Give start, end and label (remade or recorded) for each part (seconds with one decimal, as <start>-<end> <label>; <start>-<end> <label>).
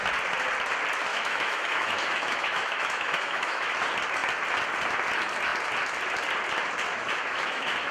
0.0-1.1 recorded; 1.1-3.7 remade; 3.7-6.9 recorded; 6.9-7.9 remade